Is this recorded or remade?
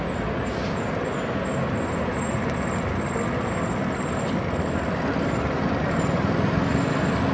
recorded